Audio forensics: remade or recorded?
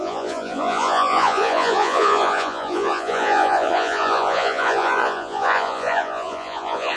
remade